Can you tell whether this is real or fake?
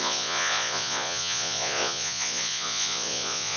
fake